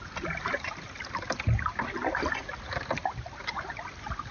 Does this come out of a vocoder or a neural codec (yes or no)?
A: no